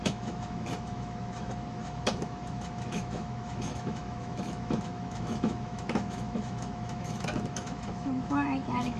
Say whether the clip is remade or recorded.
remade